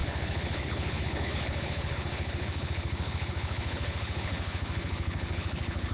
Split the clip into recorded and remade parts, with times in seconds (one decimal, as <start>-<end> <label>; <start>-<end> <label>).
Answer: 0.0-5.9 remade